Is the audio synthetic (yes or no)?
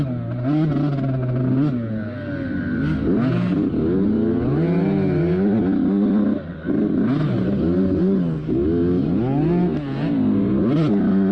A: no